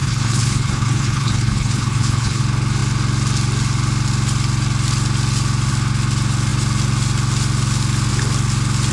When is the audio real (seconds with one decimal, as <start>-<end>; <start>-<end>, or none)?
2.4-8.9

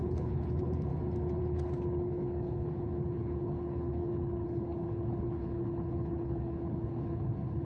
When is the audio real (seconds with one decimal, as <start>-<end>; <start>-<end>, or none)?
0.9-1.4